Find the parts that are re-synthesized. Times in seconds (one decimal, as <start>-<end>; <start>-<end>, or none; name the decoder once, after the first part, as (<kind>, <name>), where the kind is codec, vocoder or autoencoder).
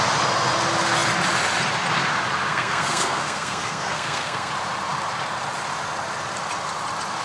2.5-4.5 (codec, SNAC)